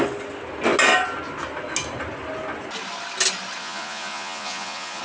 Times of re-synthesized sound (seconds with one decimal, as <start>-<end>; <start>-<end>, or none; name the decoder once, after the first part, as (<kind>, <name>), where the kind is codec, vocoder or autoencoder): 3.6-5.0 (vocoder, Vocos)